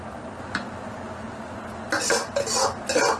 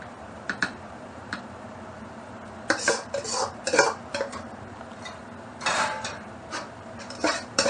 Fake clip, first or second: second